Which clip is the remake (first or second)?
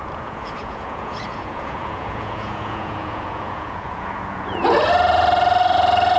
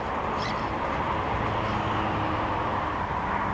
first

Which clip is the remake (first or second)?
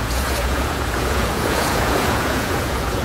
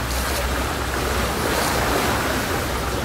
first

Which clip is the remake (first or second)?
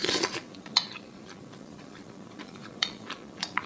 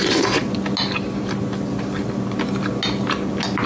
first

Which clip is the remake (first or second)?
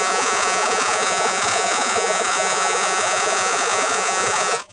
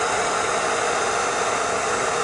first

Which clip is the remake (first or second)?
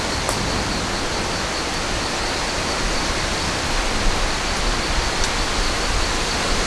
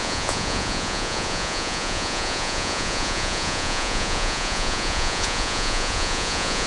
second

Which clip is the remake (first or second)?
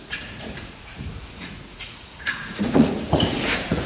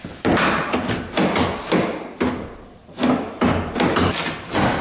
first